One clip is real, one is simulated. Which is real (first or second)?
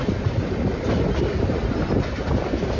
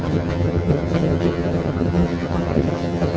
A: first